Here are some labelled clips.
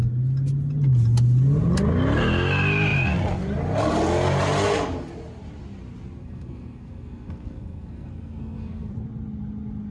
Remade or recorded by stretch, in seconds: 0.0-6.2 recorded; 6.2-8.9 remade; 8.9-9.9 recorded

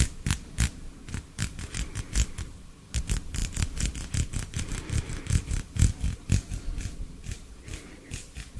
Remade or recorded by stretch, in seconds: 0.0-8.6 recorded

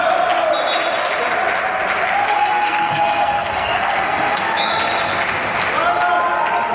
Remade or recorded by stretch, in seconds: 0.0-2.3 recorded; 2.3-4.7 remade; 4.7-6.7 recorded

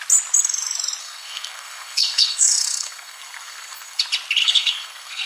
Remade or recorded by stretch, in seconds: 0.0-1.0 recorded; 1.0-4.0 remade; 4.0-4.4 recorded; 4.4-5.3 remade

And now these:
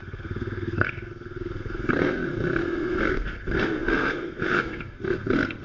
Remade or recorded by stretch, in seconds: 0.0-5.6 remade

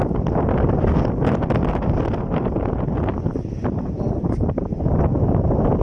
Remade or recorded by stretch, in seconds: 0.0-5.8 recorded

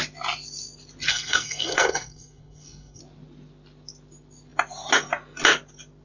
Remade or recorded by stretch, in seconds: 0.0-1.1 recorded; 1.1-3.0 remade; 3.0-6.0 recorded

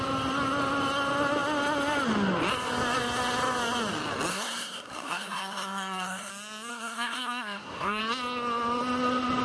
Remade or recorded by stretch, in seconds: 0.0-4.3 recorded; 4.3-6.3 remade; 6.3-6.7 recorded; 6.7-8.0 remade; 8.0-9.4 recorded